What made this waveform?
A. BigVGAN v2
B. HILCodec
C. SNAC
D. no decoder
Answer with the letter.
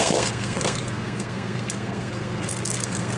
C